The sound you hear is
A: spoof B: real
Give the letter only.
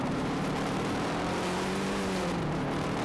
A